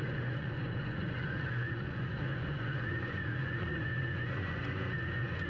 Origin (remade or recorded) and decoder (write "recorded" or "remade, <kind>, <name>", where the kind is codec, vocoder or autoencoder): remade, vocoder, Vocos